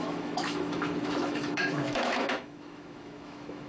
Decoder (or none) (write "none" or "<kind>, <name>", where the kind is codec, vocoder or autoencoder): autoencoder, DAC-VAE